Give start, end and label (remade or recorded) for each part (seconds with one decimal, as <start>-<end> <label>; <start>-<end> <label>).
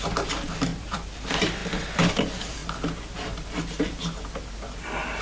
0.0-2.6 remade; 2.6-5.2 recorded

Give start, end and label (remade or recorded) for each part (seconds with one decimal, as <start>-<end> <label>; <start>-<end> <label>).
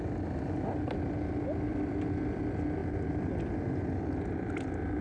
0.0-1.7 recorded; 1.7-2.4 remade; 2.4-5.0 recorded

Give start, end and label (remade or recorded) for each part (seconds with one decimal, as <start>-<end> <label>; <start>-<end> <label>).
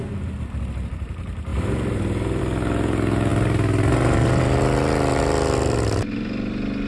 0.0-6.9 recorded